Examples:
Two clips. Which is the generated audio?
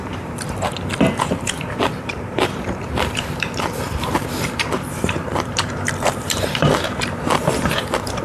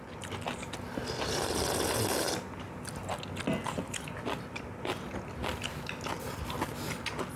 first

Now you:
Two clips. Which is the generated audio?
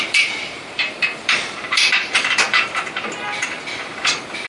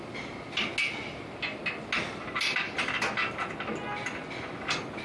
first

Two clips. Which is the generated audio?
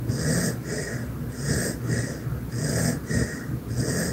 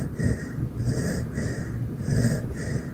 second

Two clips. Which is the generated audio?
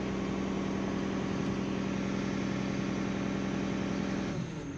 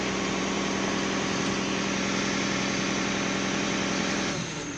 second